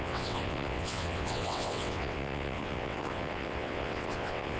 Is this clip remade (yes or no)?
yes